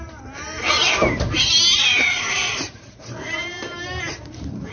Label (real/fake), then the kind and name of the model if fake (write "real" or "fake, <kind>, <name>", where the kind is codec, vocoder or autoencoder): fake, vocoder, BigVGAN v2